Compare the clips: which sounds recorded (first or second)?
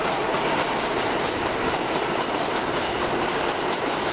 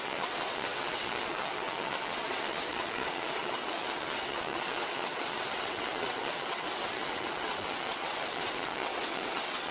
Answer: first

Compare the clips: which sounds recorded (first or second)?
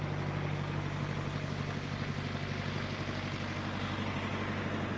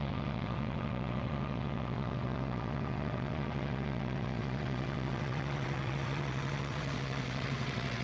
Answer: first